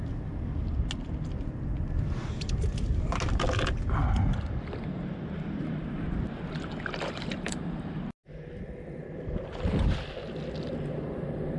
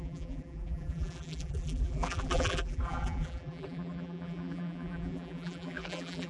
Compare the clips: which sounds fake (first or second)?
second